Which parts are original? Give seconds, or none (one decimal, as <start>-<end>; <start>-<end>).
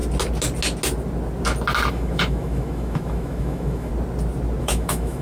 0.0-1.9; 3.9-4.6